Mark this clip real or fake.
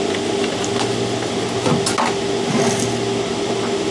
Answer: real